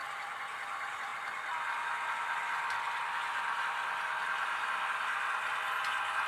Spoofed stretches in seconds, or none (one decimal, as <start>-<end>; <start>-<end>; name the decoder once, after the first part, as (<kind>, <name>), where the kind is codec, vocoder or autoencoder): none